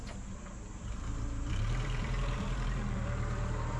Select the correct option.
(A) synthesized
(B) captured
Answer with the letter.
A